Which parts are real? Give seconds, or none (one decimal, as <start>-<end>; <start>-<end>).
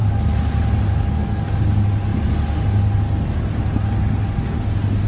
0.0-5.1